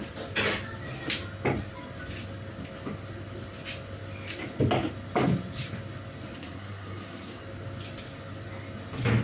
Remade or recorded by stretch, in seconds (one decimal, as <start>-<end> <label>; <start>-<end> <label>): 0.0-6.4 recorded; 6.4-7.4 remade; 7.4-9.2 recorded